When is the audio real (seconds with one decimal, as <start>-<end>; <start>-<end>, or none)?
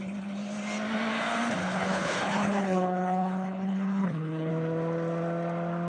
0.0-1.6; 4.5-5.9